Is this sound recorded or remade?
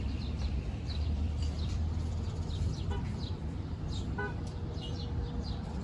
remade